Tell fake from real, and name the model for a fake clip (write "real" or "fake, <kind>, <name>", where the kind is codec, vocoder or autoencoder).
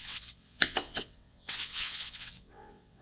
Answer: fake, vocoder, WaveNeXt